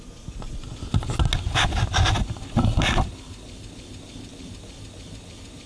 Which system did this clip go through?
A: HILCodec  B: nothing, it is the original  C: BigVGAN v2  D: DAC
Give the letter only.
B